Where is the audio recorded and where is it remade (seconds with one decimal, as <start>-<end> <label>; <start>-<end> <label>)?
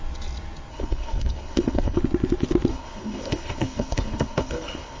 0.0-0.7 recorded; 0.7-2.0 remade; 2.0-2.7 recorded; 2.7-5.0 remade